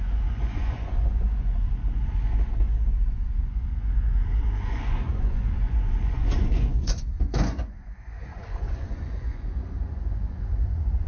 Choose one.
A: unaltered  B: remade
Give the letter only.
B